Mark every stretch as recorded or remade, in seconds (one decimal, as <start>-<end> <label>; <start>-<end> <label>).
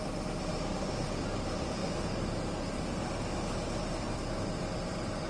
0.0-1.8 remade; 1.8-3.7 recorded; 3.7-5.3 remade